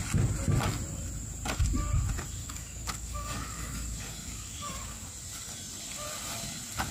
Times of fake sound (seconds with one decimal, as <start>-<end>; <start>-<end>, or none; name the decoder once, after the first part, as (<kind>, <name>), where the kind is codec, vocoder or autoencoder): 2.4-5.1 (codec, DAC)